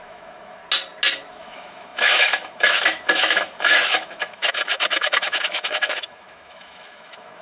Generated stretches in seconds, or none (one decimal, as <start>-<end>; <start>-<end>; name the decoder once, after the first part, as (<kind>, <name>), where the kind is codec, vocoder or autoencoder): 0.0-0.6 (autoencoder, DAC-VAE); 1.3-7.4